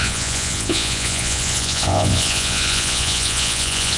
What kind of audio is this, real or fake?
fake